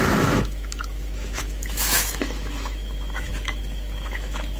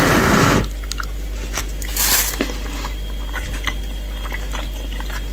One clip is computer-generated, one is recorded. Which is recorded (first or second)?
second